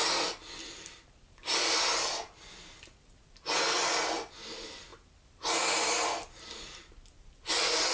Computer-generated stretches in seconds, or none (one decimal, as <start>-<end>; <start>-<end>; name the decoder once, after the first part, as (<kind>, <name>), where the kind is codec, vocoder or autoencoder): none